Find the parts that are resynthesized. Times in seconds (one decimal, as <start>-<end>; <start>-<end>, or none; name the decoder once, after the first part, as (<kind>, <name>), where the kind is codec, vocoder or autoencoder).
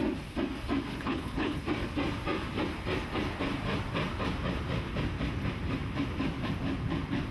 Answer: 0.9-1.6 (codec, HILCodec)